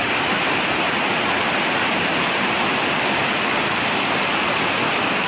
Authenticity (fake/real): real